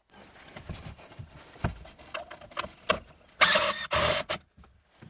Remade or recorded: recorded